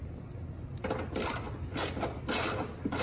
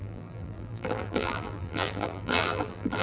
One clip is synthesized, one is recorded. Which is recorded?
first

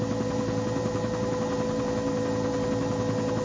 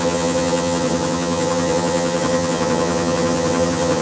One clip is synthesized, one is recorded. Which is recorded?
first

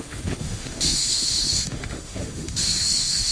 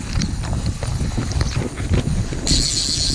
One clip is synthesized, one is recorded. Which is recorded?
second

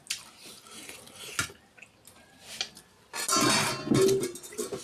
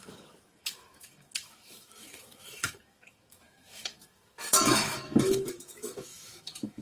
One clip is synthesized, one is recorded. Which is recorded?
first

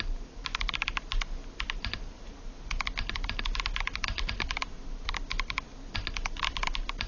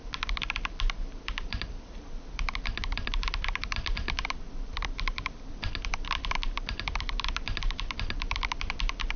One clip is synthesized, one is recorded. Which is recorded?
first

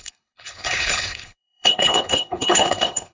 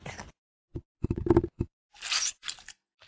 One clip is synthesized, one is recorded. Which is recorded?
second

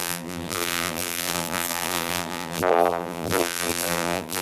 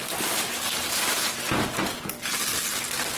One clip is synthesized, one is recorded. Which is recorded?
second